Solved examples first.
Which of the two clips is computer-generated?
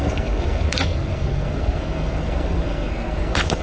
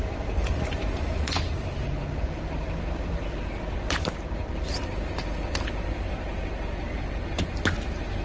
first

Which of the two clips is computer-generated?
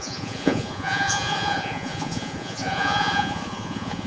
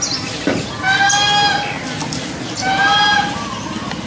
first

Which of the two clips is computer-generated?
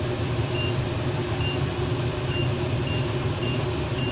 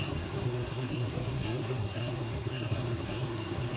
second